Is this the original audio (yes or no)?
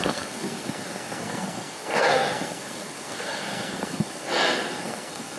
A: no